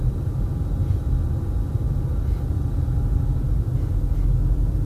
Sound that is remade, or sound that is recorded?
recorded